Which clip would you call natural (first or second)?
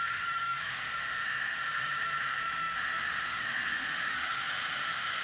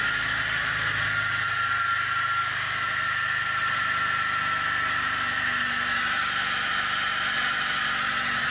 second